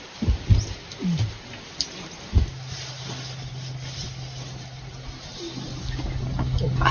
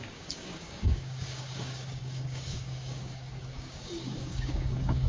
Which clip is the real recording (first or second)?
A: first